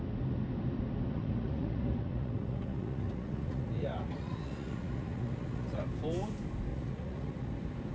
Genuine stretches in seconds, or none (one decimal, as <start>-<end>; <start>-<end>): 0.0-1.1; 5.8-6.7; 7.5-7.9